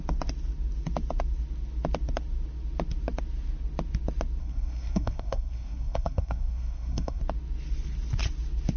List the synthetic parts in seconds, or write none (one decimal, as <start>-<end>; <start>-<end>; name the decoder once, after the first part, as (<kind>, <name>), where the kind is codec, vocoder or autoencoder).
4.4-7.2 (codec, SNAC)